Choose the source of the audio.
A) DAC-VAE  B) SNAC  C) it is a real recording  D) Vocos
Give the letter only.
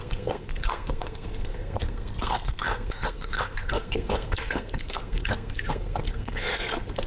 B